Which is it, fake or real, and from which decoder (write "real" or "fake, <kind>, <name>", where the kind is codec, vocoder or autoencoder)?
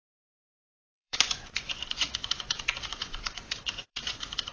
fake, vocoder, Vocos